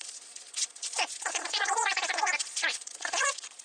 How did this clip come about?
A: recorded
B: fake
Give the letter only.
B